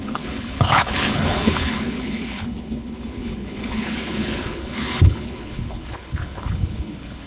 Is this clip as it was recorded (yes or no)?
no